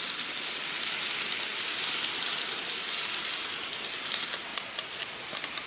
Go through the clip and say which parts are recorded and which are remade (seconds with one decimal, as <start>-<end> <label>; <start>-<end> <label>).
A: 0.0-4.5 recorded; 4.5-5.3 remade; 5.3-5.7 recorded